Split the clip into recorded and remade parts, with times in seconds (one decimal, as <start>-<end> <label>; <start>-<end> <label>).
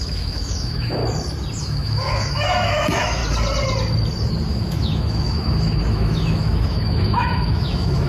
0.0-1.0 remade; 1.0-1.6 recorded; 1.6-3.2 remade; 3.2-4.5 recorded; 4.5-8.1 remade